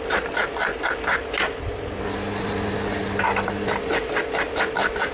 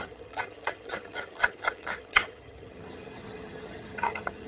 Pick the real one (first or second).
first